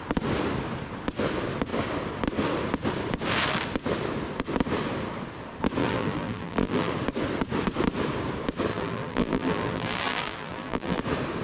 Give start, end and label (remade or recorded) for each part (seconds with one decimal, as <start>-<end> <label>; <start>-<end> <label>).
0.0-5.8 recorded; 5.8-6.9 remade; 6.9-8.7 recorded; 8.7-11.0 remade; 11.0-11.4 recorded

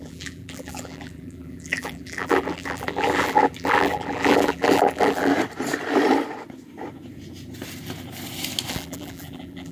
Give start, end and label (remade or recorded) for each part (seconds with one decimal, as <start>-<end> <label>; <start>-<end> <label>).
0.0-5.3 remade; 5.3-8.7 recorded; 8.7-9.7 remade